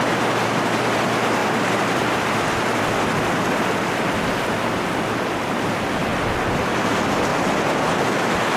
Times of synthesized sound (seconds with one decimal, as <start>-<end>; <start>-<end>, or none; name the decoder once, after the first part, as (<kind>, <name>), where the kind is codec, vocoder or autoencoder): none